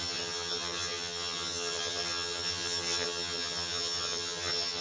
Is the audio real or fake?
fake